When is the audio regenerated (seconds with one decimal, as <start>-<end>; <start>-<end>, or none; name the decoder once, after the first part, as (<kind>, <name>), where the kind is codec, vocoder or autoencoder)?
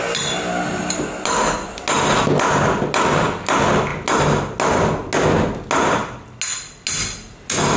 none